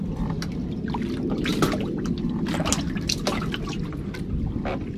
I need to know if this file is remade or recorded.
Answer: recorded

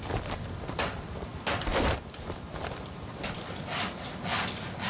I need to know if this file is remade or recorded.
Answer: recorded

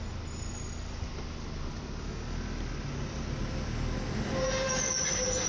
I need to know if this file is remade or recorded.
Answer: recorded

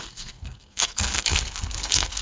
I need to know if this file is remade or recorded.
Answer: remade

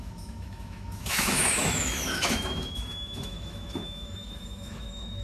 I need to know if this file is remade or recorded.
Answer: remade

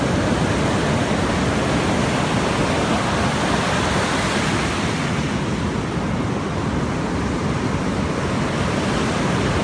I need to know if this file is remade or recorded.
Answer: recorded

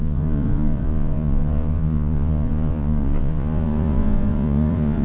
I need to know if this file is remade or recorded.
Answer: remade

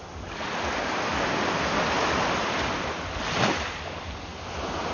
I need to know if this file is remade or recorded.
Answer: recorded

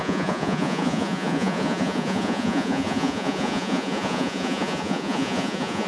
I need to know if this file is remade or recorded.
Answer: remade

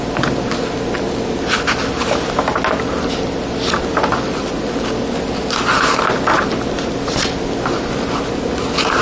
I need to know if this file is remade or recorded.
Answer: recorded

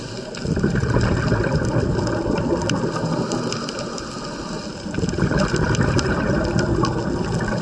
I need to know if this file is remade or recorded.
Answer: recorded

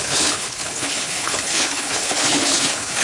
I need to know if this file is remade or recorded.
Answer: remade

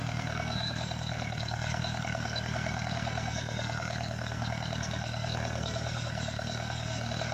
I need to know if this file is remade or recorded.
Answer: remade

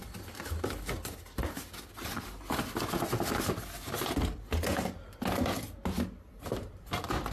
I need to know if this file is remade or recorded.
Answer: recorded